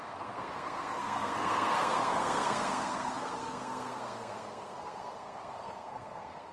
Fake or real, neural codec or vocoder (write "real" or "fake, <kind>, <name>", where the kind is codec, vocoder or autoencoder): fake, codec, SNAC